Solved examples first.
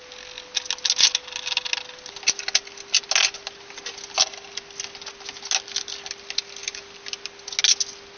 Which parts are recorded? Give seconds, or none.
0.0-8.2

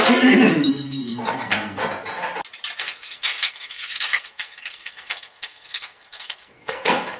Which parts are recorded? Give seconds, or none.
1.8-2.8

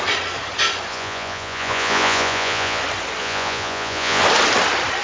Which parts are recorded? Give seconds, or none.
0.0-0.9; 2.8-3.2; 4.2-5.0

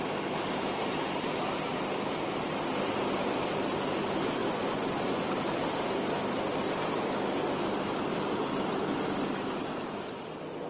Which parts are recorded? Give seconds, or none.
0.0-4.4; 5.2-10.7